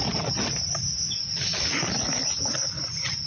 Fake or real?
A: real